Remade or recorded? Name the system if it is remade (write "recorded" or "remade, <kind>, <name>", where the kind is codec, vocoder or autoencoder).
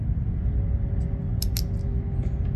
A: recorded